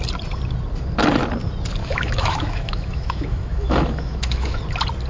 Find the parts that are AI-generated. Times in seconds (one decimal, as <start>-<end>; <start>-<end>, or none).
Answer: 1.8-4.6